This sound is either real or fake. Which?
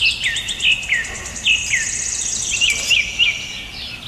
real